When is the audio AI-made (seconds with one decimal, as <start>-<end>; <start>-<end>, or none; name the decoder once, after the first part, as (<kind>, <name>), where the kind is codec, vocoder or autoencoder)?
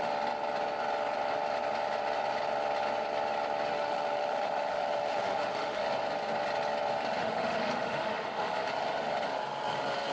3.7-5.8 (autoencoder, DAC-VAE); 7.2-8.7